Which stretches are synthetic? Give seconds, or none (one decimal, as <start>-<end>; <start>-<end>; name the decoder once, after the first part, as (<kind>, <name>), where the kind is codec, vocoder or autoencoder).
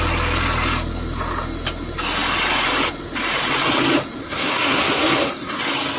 4.2-5.6 (codec, SNAC)